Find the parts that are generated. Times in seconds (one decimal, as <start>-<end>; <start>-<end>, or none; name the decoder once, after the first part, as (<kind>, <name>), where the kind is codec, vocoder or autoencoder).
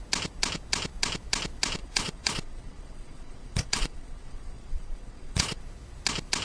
1.8-5.6 (vocoder, Vocos)